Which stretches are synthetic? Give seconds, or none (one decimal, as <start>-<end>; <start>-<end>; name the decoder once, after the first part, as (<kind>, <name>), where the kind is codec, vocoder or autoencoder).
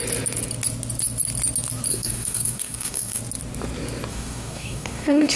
1.9-3.2 (codec, DAC); 4.1-5.4